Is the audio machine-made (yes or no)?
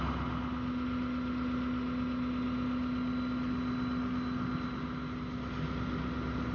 no